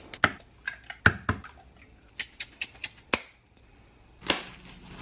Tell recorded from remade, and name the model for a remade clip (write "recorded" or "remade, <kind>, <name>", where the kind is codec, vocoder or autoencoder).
recorded